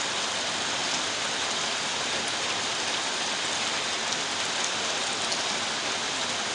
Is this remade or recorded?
recorded